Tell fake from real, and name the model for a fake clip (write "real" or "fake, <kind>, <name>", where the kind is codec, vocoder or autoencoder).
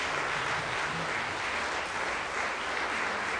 real